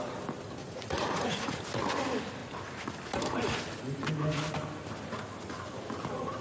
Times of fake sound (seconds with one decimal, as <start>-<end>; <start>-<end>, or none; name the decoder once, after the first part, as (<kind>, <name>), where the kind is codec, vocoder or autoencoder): 0.6-1.6 (vocoder, Vocos)